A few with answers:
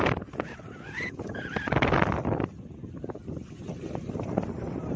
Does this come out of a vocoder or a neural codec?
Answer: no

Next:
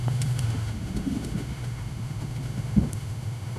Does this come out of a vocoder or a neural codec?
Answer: yes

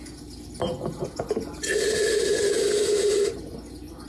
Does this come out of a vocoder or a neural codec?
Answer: no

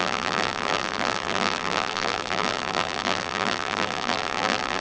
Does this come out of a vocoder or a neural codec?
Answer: yes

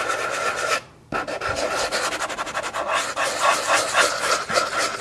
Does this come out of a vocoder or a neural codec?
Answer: no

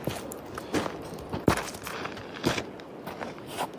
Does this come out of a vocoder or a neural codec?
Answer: no